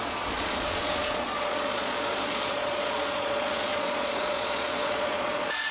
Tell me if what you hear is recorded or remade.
remade